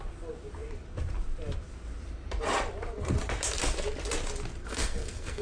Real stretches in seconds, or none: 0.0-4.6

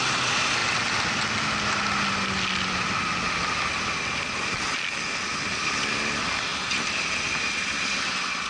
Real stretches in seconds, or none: 0.0-6.5; 7.3-8.5

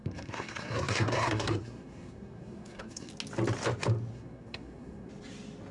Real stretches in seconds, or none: 3.1-4.1; 5.1-5.7

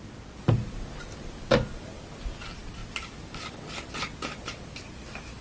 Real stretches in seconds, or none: 0.0-5.4

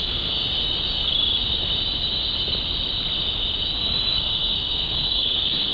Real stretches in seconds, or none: 0.4-3.8

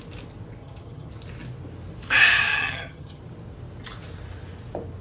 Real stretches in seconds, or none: 0.0-0.6; 1.1-2.5; 3.2-5.0

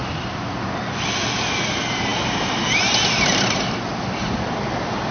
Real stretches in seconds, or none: 0.0-1.7

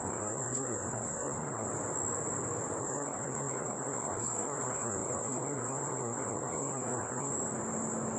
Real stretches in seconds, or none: 1.7-2.8; 7.3-8.2